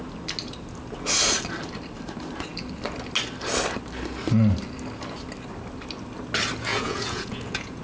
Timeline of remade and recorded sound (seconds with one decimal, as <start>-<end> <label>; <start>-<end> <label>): 0.0-6.7 recorded; 6.7-7.8 remade